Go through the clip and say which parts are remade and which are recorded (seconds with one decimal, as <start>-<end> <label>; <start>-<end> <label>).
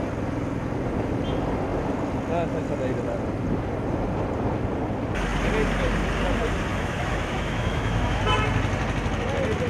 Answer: 0.0-6.7 recorded; 6.7-8.2 remade; 8.2-9.7 recorded